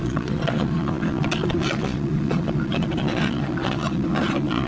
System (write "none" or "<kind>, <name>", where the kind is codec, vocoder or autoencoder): vocoder, Vocos